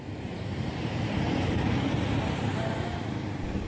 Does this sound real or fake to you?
fake